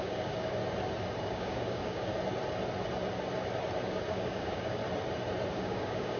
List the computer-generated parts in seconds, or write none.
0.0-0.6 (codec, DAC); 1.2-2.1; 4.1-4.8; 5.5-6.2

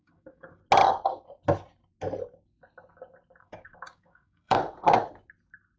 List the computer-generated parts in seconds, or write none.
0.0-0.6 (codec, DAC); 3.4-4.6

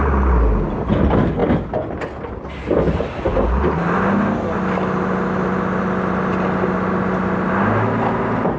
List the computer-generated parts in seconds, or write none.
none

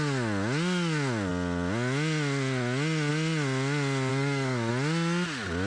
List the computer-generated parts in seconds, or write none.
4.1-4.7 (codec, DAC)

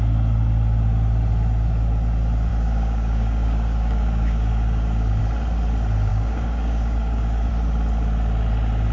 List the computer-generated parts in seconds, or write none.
2.5-5.2 (codec, DAC); 6.1-7.5